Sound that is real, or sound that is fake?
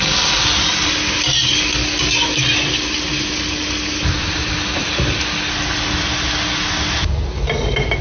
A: real